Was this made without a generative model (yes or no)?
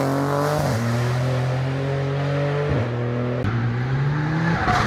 yes